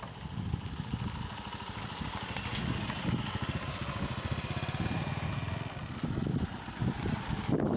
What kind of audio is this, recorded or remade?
recorded